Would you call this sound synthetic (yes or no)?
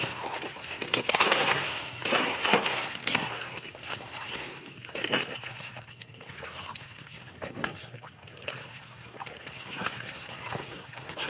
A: yes